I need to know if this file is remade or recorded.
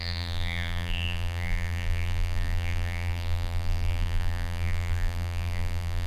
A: remade